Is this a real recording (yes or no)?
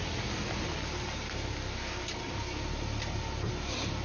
yes